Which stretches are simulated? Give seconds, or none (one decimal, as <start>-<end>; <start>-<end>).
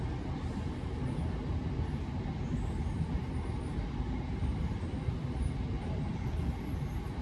none